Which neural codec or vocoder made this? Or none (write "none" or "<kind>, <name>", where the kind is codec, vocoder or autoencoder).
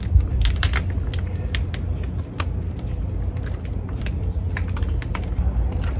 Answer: none